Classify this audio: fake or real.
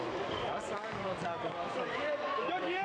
fake